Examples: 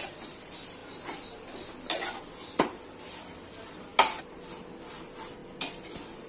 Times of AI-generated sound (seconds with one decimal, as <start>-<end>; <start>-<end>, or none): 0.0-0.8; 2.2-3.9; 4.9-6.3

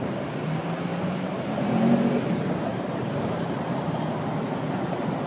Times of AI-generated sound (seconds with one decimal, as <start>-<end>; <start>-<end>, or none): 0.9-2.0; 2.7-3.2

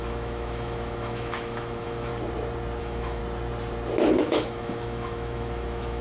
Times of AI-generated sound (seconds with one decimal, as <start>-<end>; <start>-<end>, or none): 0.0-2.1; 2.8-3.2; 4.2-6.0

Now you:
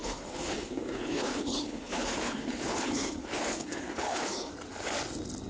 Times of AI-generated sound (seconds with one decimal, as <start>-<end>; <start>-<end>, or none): 0.0-4.5

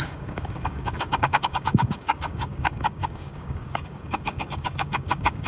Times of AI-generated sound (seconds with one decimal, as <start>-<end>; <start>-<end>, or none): 0.0-5.5

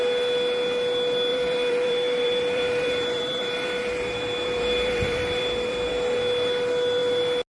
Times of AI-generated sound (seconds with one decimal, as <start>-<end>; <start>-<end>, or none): 1.3-5.9

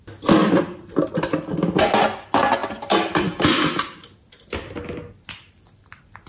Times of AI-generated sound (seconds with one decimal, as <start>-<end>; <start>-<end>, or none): none

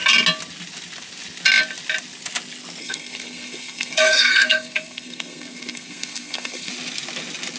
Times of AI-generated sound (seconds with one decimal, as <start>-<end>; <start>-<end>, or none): 2.8-6.7